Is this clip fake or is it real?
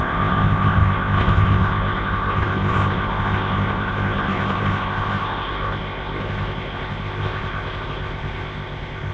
fake